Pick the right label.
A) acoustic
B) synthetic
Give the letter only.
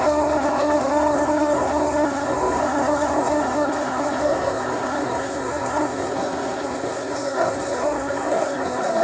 B